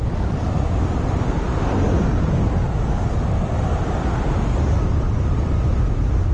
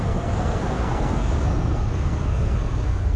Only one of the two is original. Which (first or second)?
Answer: first